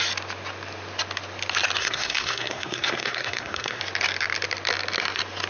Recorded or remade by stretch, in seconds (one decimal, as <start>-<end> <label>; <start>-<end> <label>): 0.0-1.8 recorded; 1.8-3.8 remade; 3.8-5.5 recorded